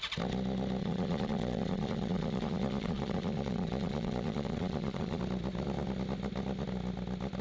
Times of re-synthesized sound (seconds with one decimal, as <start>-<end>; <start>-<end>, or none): 0.8-5.2